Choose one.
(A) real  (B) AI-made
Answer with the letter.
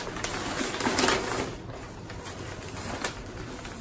A